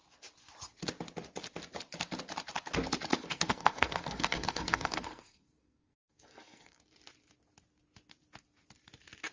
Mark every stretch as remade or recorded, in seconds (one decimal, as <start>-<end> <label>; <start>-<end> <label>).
0.0-3.1 recorded; 3.1-6.8 remade; 6.8-9.3 recorded